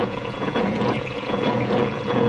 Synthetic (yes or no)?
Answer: yes